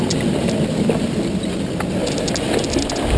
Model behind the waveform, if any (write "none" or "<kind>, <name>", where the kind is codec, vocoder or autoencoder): none